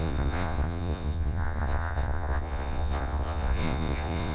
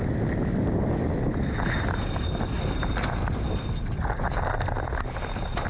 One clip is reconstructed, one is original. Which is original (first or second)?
second